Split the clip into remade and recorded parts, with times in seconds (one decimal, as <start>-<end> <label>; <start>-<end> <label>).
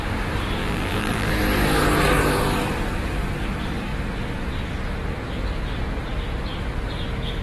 0.0-0.6 recorded; 0.6-1.3 remade; 1.3-7.4 recorded